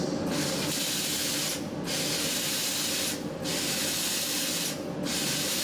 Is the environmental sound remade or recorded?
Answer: recorded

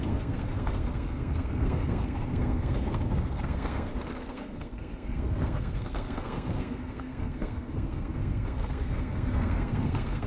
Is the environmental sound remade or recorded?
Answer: remade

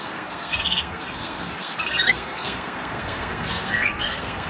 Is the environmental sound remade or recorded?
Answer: remade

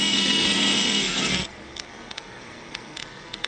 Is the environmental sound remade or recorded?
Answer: remade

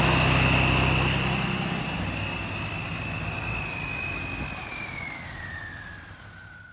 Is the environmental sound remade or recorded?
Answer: recorded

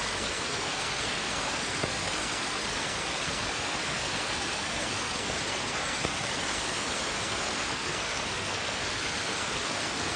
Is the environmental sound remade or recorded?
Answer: remade